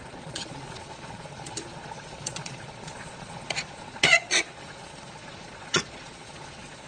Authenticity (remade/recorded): remade